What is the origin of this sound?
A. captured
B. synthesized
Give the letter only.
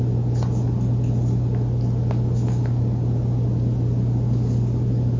A